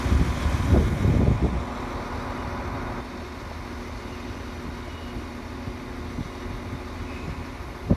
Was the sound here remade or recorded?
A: recorded